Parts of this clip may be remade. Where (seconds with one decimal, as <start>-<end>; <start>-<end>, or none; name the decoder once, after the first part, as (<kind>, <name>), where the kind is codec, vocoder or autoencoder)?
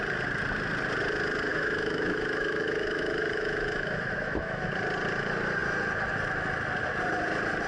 1.5-4.7 (autoencoder, DAC-VAE)